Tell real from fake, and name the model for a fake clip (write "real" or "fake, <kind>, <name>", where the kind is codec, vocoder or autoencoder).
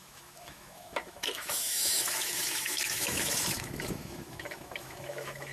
fake, autoencoder, DAC-VAE